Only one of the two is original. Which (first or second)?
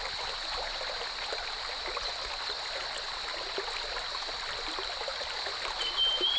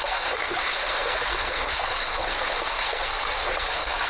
first